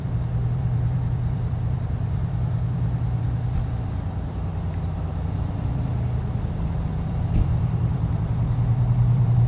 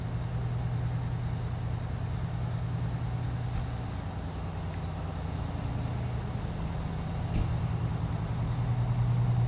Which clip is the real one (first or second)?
second